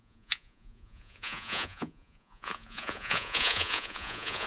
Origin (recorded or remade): remade